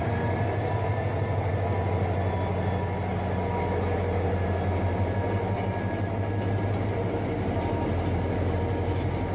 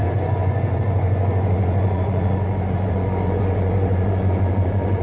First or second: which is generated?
second